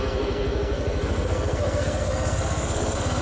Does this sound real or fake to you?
fake